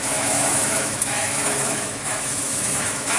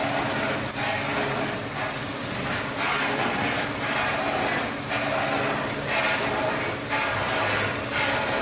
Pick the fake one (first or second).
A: first